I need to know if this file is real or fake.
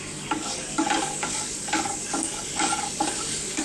fake